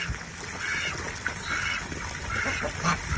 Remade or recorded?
recorded